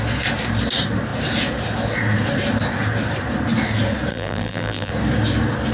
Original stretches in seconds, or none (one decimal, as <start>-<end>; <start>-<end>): 0.0-4.1; 4.9-5.7